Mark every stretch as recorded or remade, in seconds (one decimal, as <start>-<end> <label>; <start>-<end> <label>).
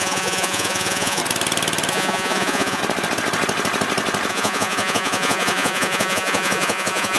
0.0-1.2 remade; 1.2-1.9 recorded; 1.9-2.8 remade; 2.8-4.3 recorded; 4.3-7.2 remade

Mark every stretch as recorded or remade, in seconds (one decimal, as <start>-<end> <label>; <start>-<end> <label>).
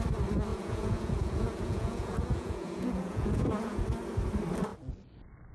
0.0-0.5 recorded; 0.5-3.8 remade; 3.8-5.5 recorded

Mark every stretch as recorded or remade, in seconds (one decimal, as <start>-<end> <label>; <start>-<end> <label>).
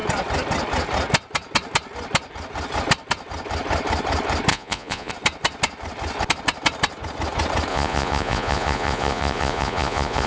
0.0-4.5 recorded; 4.5-5.1 remade; 5.1-7.7 recorded; 7.7-10.3 remade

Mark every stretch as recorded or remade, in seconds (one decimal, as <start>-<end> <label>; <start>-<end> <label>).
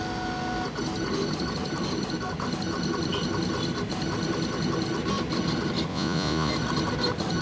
0.0-5.9 recorded; 5.9-6.5 remade; 6.5-7.4 recorded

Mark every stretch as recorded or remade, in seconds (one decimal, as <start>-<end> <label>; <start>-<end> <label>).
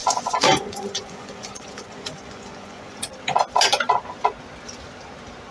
0.0-3.1 remade; 3.1-5.5 recorded